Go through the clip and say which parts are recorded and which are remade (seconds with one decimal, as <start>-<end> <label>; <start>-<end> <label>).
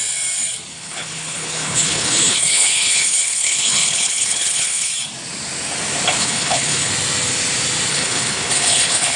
0.0-0.7 recorded; 0.7-4.9 remade; 4.9-6.2 recorded; 6.2-6.9 remade; 6.9-7.9 recorded; 7.9-9.2 remade